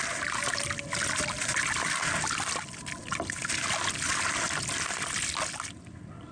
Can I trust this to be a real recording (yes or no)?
yes